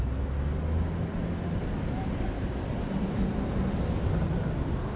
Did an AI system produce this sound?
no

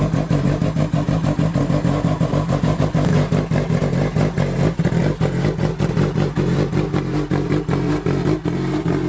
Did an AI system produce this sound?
no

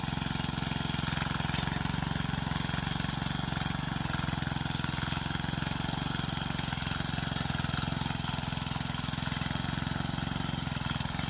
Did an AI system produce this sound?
no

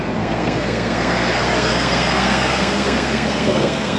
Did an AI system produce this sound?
yes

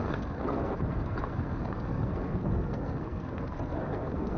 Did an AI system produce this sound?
yes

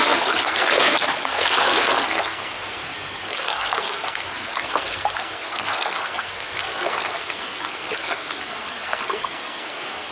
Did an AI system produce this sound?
yes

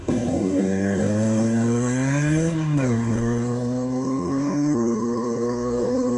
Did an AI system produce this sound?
yes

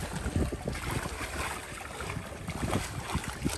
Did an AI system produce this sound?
no